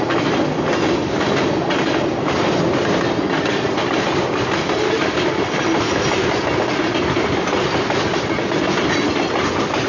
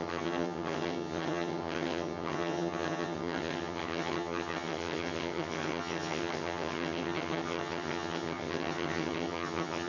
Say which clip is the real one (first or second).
first